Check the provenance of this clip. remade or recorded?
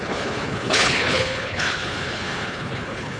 remade